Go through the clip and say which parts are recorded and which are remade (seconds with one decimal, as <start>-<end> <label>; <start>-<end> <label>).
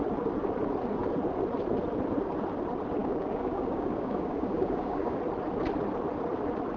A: 0.0-3.0 recorded; 3.0-5.2 remade; 5.2-6.8 recorded